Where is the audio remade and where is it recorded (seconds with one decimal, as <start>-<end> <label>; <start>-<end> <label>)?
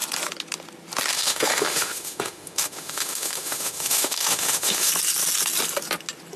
0.0-1.1 recorded; 1.1-4.9 remade; 4.9-6.4 recorded